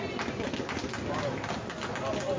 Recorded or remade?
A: recorded